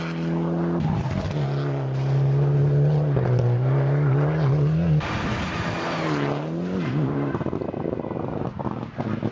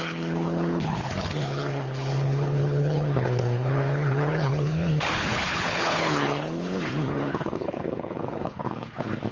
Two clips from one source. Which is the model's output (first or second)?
second